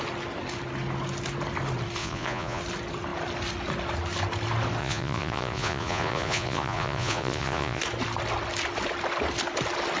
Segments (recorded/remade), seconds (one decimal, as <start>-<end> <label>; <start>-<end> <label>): 0.0-2.0 recorded; 2.0-2.6 remade; 2.6-4.8 recorded; 4.8-7.8 remade; 7.8-10.0 recorded